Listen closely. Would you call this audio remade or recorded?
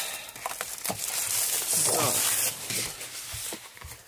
recorded